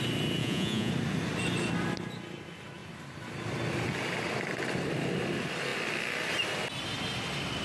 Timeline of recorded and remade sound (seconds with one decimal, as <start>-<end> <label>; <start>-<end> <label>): 0.0-0.4 recorded; 0.4-0.9 remade; 0.9-7.6 recorded